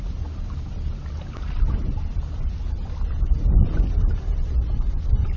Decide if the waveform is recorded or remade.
recorded